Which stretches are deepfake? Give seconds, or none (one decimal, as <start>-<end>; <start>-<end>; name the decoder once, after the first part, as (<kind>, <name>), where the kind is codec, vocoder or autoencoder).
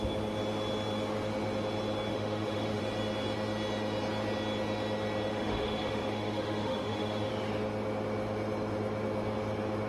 2.1-2.8 (autoencoder, DAC-VAE); 5.3-7.3